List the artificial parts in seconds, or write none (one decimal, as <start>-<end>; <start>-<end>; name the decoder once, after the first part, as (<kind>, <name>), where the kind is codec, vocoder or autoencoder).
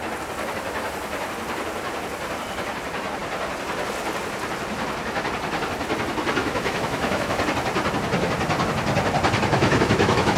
6.4-7.4 (autoencoder, DAC-VAE); 9.5-10.4